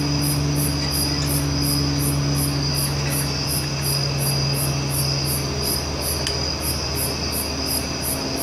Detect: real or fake real